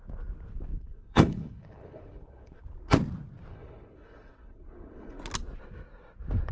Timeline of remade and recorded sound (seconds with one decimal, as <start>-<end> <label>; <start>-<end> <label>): 0.0-0.7 recorded; 0.7-2.6 remade; 2.6-3.5 recorded; 3.5-5.2 remade; 5.2-6.5 recorded